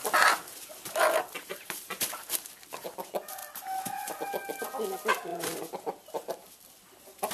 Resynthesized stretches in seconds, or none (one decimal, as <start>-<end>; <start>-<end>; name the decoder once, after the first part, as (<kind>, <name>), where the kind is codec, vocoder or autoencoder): 1.4-2.1 (vocoder, BigVGAN v2)